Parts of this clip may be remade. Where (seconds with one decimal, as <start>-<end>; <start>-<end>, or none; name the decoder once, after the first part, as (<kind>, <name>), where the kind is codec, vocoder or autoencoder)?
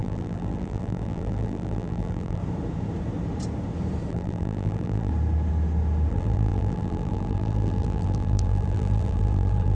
0.0-2.4 (vocoder, BigVGAN v2); 4.1-5.1; 6.1-9.7